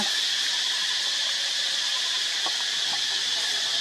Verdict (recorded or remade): recorded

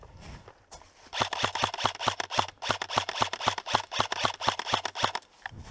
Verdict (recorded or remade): recorded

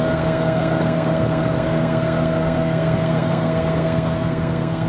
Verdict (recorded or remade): remade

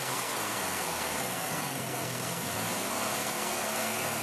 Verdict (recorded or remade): remade